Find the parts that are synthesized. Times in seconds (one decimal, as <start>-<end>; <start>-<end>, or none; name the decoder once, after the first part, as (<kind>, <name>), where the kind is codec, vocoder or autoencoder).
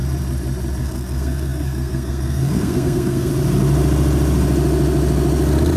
0.8-3.3 (codec, SNAC)